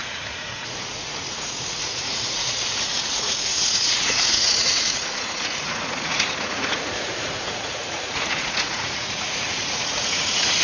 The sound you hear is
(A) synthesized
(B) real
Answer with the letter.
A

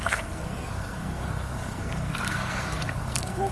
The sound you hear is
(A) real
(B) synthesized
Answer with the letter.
B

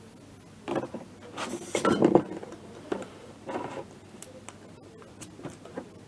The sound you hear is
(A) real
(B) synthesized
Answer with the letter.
A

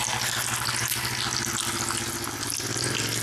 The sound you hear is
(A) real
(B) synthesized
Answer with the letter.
A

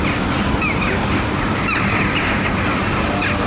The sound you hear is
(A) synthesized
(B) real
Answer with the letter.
A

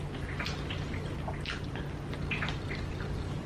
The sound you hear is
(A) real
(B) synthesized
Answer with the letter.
A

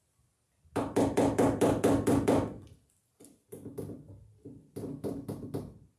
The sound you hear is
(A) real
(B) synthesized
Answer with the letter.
A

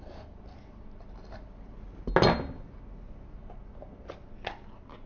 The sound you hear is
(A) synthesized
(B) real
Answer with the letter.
B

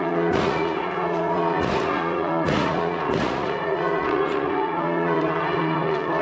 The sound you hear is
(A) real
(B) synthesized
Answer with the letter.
B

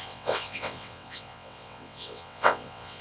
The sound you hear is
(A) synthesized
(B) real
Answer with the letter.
A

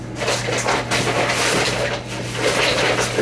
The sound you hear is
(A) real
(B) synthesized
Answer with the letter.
A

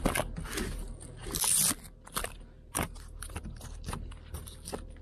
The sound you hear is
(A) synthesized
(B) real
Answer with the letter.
B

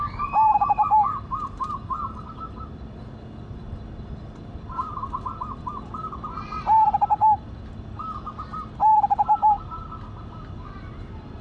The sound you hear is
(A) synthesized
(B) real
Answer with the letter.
B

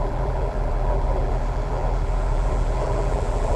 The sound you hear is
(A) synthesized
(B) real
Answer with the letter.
A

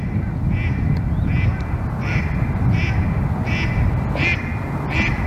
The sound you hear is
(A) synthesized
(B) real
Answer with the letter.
B